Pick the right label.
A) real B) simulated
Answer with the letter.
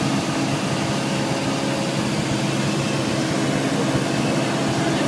A